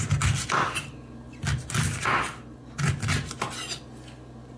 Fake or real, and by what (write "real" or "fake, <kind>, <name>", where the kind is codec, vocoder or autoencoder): real